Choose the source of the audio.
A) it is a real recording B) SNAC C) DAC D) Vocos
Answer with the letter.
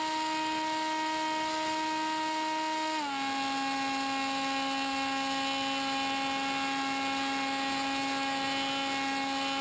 A